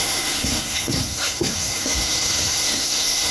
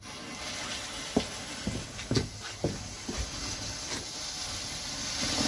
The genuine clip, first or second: second